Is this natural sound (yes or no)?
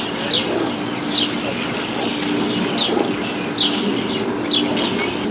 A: yes